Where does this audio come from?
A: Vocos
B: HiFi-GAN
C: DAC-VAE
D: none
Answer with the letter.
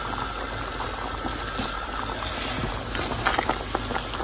D